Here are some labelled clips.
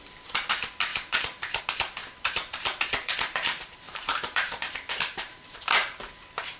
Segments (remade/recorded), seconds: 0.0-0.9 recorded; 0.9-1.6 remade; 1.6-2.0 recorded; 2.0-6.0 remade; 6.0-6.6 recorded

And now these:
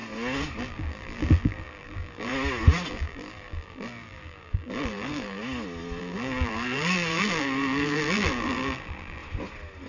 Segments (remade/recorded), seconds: 0.0-0.6 recorded; 0.6-2.3 remade; 2.3-2.9 recorded; 2.9-5.4 remade; 5.4-6.0 recorded; 6.0-9.2 remade; 9.2-9.9 recorded

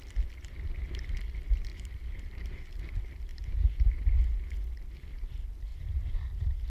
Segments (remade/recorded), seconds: 0.0-1.7 recorded; 1.7-2.8 remade; 2.8-3.3 recorded; 3.3-4.7 remade; 4.7-5.7 recorded; 5.7-6.7 remade

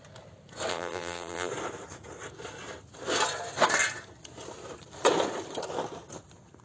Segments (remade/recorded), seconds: 0.0-0.7 recorded; 0.7-1.5 remade; 1.5-6.6 recorded

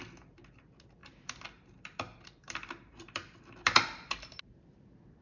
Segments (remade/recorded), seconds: 0.0-1.0 recorded; 1.0-4.1 remade; 4.1-5.2 recorded

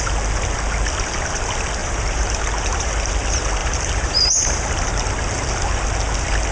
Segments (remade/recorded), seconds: 0.0-1.8 recorded; 1.8-2.9 remade; 2.9-3.6 recorded; 3.6-4.9 remade; 4.9-6.5 recorded

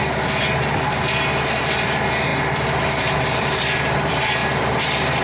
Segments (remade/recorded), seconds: 0.0-1.6 recorded; 1.6-5.2 remade